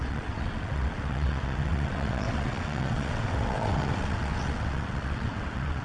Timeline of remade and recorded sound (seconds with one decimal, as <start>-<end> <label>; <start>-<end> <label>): 0.0-5.8 remade